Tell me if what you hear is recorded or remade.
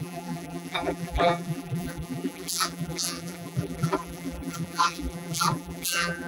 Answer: remade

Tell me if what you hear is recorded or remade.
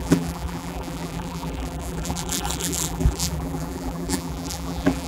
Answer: remade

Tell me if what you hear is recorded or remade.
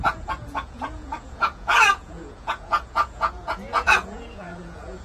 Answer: remade